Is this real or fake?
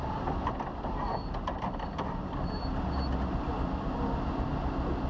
real